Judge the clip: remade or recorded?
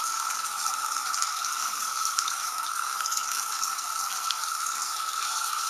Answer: remade